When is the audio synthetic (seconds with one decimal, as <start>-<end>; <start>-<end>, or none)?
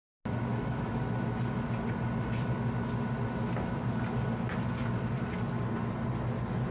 0.5-1.0